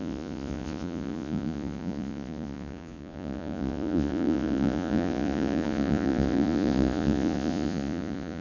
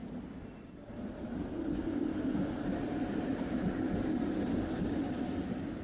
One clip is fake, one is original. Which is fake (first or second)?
first